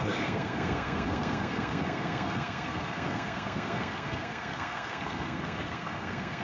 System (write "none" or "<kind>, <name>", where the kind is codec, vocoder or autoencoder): codec, SNAC